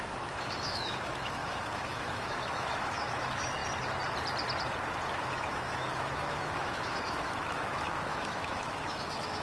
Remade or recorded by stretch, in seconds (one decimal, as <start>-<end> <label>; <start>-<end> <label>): 0.0-3.6 remade; 3.6-5.1 recorded; 5.1-9.4 remade